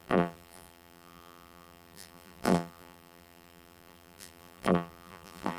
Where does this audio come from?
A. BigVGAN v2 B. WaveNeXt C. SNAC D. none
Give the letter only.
A